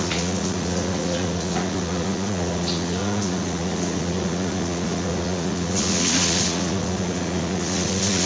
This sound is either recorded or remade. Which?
remade